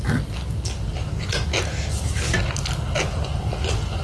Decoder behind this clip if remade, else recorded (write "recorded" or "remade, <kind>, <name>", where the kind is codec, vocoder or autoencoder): recorded